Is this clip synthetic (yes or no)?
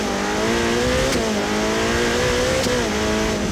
no